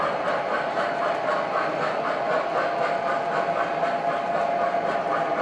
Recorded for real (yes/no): yes